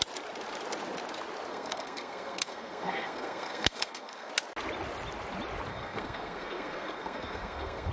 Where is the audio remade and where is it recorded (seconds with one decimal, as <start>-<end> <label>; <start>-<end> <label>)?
0.0-1.5 recorded; 1.5-4.3 remade; 4.3-5.7 recorded; 5.7-7.9 remade